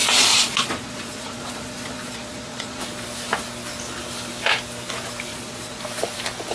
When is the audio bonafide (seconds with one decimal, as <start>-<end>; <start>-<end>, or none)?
2.8-5.3; 5.8-6.5